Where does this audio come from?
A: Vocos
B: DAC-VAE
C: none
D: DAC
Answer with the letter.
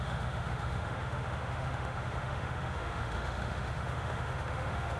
B